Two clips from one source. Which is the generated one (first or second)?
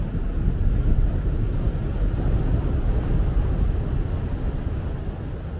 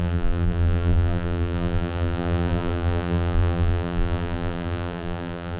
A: second